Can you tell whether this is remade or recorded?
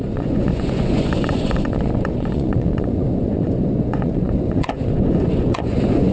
remade